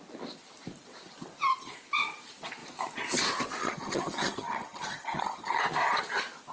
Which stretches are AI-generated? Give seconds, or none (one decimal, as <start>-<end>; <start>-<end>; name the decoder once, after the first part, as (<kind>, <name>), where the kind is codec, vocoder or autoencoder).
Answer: 3.6-5.6 (vocoder, HiFi-GAN)